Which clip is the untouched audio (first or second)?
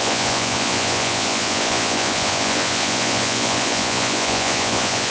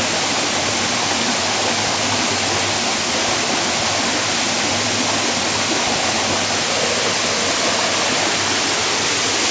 second